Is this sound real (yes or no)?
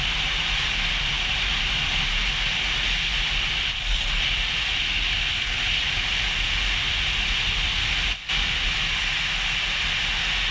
yes